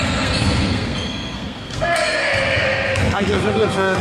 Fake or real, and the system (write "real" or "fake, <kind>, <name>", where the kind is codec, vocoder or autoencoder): fake, codec, SNAC